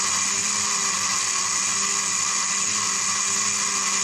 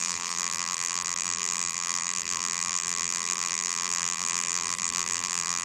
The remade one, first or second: second